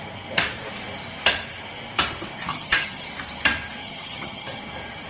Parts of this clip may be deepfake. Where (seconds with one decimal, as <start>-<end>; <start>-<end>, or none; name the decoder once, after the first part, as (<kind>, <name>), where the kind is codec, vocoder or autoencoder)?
2.5-3.1 (vocoder, HiFi-GAN); 3.8-4.6